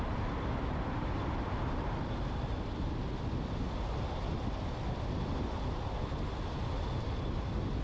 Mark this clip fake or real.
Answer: real